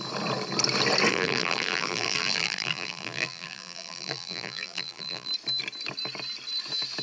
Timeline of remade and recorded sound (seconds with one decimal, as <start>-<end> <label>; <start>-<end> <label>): 0.0-1.1 recorded; 1.1-5.3 remade; 5.3-7.0 recorded